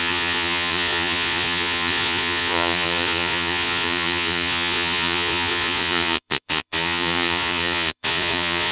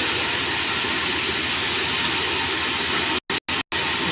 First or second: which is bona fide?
second